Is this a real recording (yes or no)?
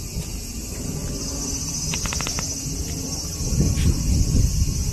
yes